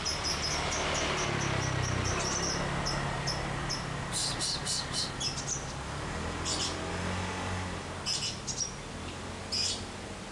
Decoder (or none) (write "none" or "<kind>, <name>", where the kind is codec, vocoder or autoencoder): none